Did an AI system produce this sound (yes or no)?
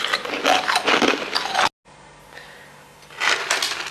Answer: no